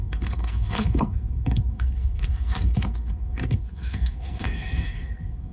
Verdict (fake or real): fake